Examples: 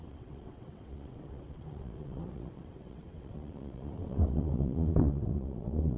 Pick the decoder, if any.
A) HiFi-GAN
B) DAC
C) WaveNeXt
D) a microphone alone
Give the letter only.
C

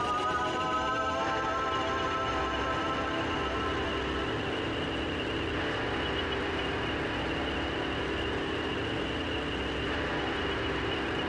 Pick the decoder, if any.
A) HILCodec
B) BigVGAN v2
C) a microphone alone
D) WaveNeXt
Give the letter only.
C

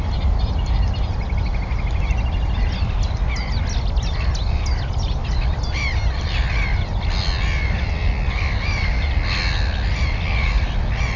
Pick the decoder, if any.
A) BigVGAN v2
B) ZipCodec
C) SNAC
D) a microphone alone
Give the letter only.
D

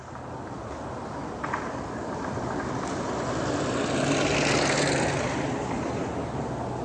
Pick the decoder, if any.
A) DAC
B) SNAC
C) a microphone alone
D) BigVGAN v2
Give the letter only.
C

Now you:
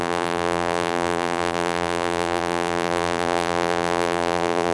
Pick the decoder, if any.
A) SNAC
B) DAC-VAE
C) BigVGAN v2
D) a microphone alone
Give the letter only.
C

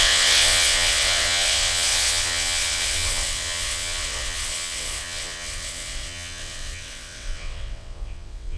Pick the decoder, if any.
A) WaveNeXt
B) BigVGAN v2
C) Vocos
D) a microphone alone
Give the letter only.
A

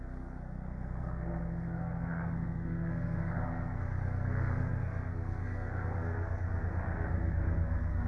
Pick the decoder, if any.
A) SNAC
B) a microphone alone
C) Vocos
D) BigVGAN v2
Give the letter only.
A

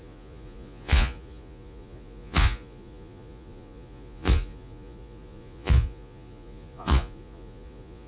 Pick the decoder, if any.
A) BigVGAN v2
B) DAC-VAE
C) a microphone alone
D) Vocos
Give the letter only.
D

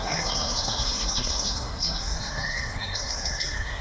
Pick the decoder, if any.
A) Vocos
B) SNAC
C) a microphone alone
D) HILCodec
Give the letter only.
B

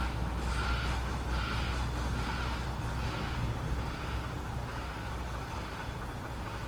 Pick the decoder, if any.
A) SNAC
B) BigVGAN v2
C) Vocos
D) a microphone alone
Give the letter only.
D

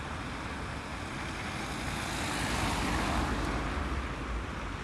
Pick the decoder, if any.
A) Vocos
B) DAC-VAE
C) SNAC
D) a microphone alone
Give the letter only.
D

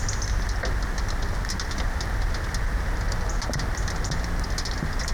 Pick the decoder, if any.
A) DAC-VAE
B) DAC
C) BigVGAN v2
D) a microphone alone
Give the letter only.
D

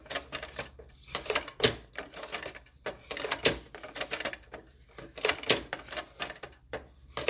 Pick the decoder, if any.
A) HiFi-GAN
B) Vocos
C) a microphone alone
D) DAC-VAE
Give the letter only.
C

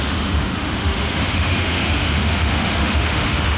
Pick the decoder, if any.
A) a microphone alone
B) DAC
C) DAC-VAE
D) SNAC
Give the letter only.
C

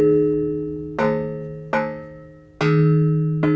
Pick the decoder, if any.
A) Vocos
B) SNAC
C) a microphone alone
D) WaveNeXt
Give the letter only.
C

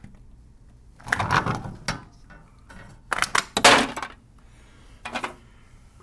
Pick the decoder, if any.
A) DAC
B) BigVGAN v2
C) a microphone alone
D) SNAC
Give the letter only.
C